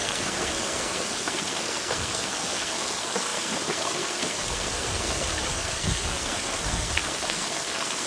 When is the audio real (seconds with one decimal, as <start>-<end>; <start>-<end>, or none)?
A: none